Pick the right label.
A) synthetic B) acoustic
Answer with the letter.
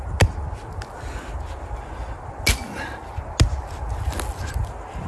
B